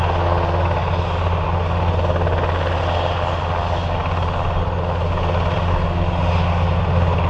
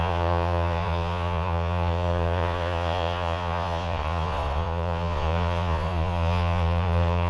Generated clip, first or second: second